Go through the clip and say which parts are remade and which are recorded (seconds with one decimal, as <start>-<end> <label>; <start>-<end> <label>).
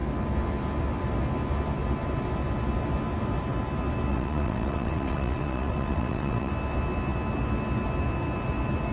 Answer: 0.0-4.1 recorded; 4.1-6.5 remade; 6.5-8.9 recorded